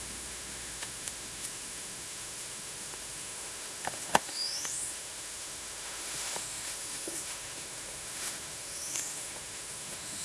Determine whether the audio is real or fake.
fake